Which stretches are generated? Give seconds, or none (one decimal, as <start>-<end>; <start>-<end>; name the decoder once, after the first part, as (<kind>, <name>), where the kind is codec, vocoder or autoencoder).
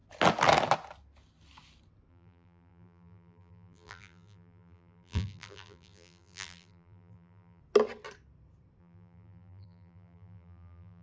2.1-7.6 (vocoder, BigVGAN v2); 8.8-11.0